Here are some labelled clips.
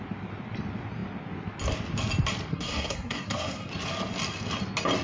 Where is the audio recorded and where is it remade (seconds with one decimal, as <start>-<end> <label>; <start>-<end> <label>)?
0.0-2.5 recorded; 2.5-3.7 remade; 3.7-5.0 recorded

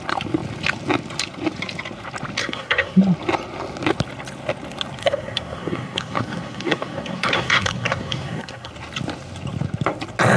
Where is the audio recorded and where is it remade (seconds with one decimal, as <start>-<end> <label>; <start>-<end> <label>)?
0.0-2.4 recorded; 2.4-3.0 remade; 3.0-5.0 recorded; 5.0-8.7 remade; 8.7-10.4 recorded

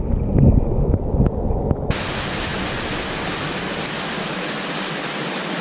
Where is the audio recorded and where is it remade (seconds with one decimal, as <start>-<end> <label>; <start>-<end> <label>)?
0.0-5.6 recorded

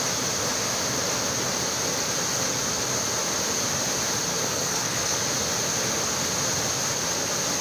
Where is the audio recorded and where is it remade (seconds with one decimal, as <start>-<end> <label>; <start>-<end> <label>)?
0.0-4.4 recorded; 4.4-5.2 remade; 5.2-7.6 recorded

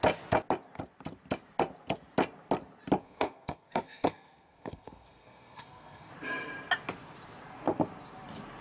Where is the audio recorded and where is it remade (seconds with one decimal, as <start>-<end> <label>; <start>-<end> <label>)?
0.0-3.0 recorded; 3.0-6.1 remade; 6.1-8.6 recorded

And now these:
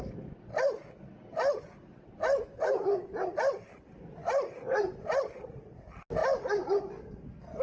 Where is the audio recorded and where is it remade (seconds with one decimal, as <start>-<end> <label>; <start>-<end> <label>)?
0.0-7.6 recorded

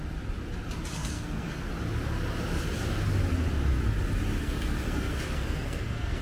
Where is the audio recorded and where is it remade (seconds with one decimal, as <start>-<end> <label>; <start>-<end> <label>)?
0.0-0.9 recorded; 0.9-1.7 remade; 1.7-4.4 recorded; 4.4-6.2 remade